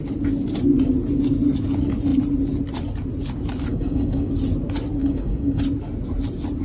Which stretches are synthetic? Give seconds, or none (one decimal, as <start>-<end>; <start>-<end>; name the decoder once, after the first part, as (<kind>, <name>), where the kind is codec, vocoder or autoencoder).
3.7-4.3 (codec, DAC); 5.0-5.6